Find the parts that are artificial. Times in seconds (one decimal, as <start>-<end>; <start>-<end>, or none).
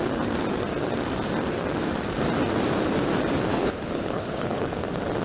3.5-4.8